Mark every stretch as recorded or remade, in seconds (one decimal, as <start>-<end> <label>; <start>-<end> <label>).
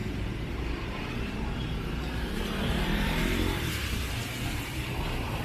0.0-5.4 remade